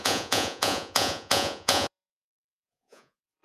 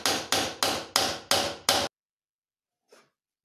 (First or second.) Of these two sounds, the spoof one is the first